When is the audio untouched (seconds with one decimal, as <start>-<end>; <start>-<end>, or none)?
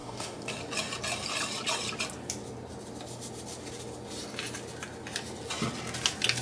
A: 0.5-6.4